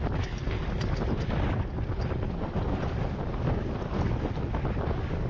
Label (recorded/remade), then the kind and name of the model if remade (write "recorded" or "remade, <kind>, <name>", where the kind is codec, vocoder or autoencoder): recorded